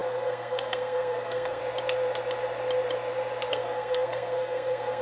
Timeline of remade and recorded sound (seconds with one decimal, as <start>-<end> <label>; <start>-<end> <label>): 0.0-1.6 remade; 1.6-3.5 recorded; 3.5-5.0 remade